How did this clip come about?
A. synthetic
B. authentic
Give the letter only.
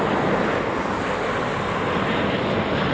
B